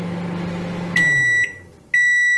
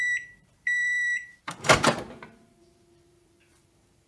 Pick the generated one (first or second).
second